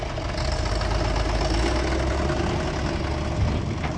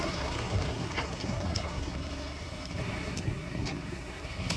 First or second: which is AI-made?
second